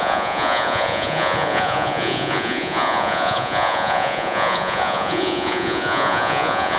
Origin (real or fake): fake